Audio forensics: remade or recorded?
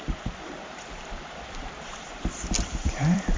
remade